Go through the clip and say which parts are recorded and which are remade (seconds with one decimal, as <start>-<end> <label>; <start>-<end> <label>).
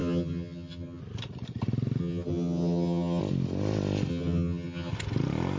0.0-1.0 remade; 1.0-2.0 recorded; 2.0-3.2 remade; 3.2-4.1 recorded; 4.1-4.9 remade; 4.9-5.6 recorded